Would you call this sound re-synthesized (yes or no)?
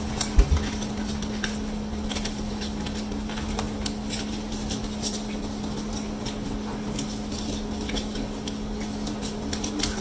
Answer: no